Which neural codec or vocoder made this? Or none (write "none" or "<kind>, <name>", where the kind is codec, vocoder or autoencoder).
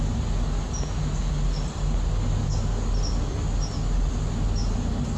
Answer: none